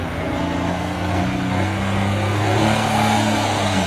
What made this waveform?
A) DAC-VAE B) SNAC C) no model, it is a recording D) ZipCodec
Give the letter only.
B